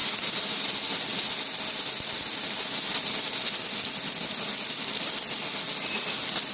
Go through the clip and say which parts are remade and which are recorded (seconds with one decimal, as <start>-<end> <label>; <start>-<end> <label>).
0.0-6.5 recorded